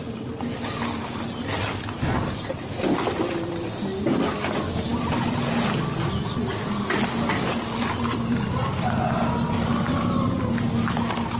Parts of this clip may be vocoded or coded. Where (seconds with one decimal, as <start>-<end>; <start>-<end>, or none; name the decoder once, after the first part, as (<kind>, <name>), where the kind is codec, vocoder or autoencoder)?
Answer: none